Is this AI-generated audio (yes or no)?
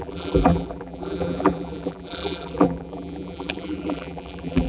yes